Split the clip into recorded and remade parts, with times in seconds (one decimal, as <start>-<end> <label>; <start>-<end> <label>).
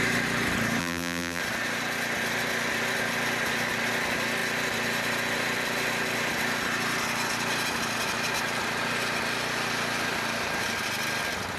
0.0-0.8 recorded; 0.8-1.4 remade; 1.4-11.6 recorded